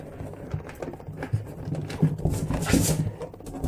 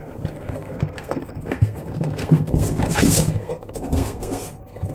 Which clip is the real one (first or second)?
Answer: first